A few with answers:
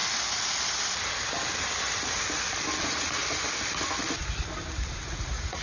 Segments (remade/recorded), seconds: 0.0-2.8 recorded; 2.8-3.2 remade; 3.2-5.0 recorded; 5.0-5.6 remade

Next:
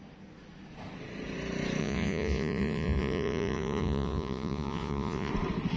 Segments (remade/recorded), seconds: 0.0-1.8 recorded; 1.8-5.3 remade; 5.3-5.8 recorded